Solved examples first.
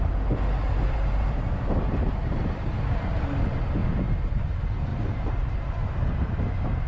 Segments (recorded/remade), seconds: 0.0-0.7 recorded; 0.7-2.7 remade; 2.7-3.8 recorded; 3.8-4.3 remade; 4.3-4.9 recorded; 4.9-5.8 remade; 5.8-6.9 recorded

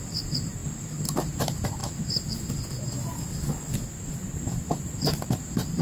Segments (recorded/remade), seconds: 0.0-0.6 remade; 0.6-1.4 recorded; 1.4-1.8 remade; 1.8-4.1 recorded; 4.1-5.8 remade

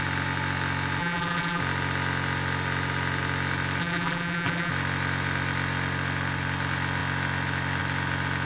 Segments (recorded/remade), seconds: 0.0-1.0 recorded; 1.0-1.6 remade; 1.6-3.8 recorded; 3.8-4.7 remade; 4.7-8.5 recorded